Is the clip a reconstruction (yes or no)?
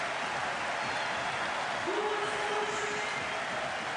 no